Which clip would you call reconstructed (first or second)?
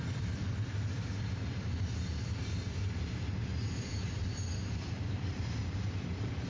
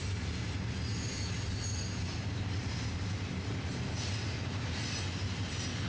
first